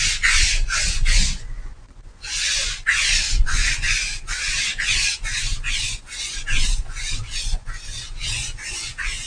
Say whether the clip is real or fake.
fake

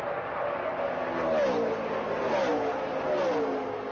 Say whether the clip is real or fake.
real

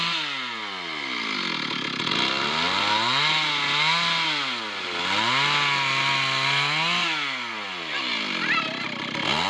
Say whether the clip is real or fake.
real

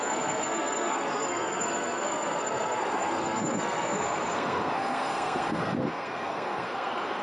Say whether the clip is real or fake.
fake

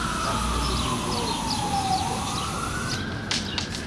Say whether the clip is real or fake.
real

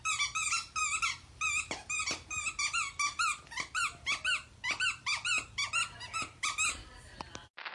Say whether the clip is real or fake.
real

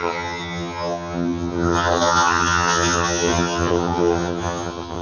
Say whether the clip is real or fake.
fake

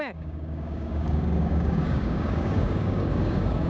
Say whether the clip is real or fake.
fake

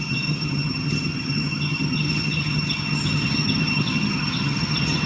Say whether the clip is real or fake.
fake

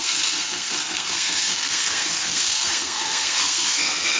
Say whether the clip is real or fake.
fake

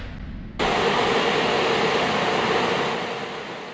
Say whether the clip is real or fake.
real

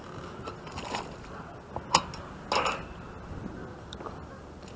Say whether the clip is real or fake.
real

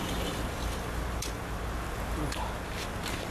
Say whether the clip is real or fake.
real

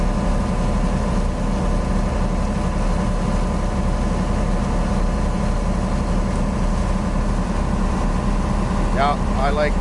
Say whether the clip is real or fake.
real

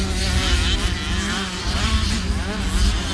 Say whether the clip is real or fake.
real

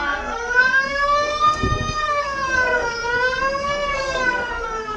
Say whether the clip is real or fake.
fake